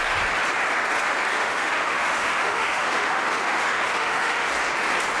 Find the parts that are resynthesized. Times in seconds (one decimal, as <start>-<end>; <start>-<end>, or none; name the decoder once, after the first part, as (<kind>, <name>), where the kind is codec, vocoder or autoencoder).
1.4-4.5 (autoencoder, DAC-VAE)